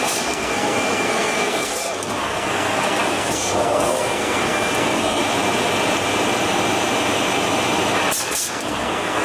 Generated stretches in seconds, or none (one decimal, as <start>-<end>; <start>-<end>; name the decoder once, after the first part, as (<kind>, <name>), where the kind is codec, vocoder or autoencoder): 0.0-5.2 (codec, SNAC); 8.2-9.2